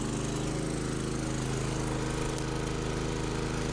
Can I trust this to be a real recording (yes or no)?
yes